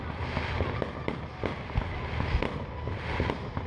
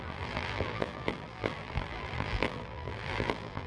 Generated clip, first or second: second